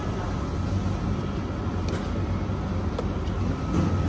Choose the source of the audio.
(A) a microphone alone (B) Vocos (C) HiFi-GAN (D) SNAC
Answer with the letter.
A